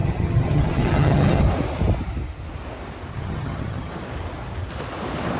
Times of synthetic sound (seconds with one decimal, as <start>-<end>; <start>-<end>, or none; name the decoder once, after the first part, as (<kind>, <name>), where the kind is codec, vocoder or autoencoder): 0.0-1.4 (vocoder, HiFi-GAN); 3.1-3.9